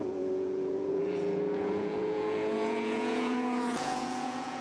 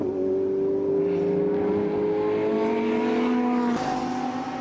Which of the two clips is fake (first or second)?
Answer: first